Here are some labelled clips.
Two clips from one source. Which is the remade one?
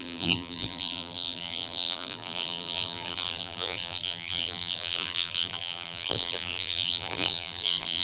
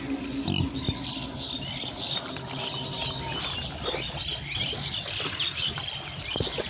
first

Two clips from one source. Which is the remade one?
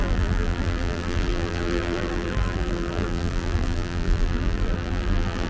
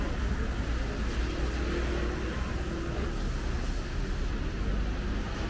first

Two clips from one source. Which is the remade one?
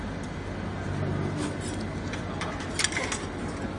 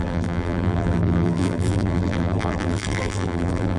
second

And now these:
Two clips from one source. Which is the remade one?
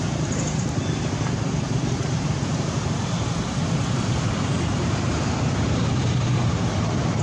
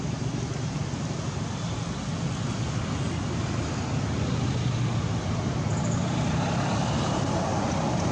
first